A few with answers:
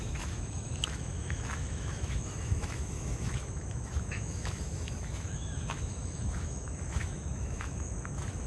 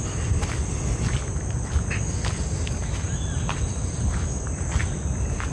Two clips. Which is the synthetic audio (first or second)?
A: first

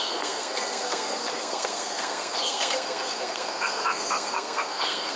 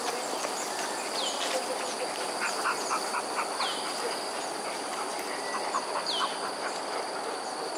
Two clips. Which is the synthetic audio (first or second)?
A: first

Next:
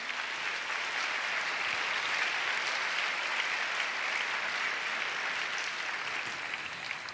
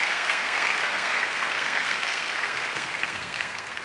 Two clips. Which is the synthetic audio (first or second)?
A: second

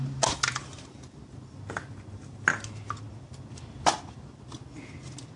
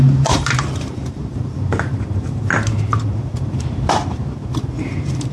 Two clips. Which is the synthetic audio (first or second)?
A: second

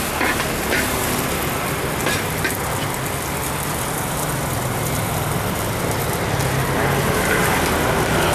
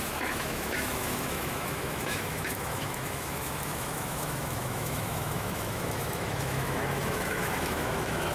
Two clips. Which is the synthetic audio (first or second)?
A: second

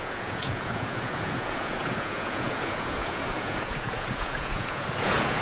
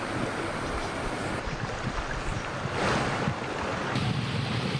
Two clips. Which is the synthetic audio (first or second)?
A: first